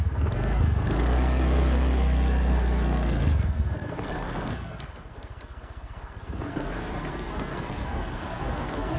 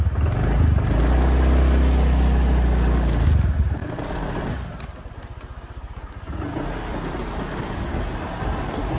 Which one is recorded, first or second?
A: second